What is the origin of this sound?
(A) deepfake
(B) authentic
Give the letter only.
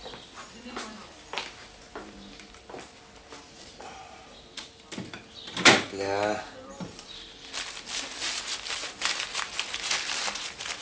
B